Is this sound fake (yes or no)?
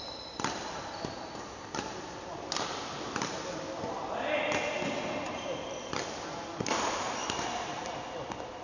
no